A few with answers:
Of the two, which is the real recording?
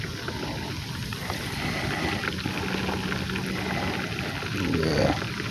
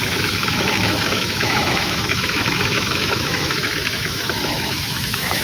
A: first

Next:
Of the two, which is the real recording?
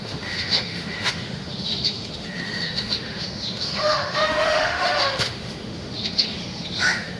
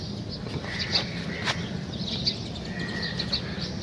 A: second